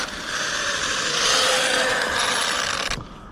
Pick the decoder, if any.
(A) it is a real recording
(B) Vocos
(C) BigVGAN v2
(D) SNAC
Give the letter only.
C